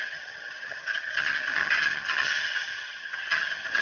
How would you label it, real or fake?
fake